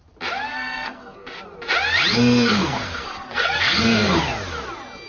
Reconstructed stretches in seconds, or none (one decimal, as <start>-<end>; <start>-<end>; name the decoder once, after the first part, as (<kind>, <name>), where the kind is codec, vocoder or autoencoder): 0.5-1.4 (codec, SNAC); 2.1-4.2